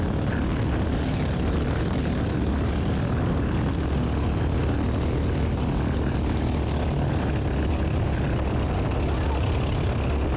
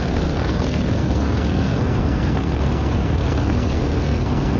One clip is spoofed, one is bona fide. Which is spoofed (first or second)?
second